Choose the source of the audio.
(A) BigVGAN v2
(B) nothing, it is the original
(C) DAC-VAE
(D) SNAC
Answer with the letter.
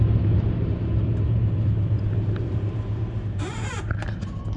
A